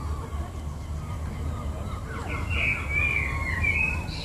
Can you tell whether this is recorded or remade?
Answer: recorded